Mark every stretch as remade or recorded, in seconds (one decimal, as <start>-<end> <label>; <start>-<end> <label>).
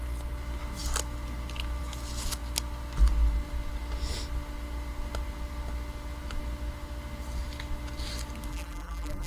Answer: 0.0-8.5 recorded; 8.5-9.3 remade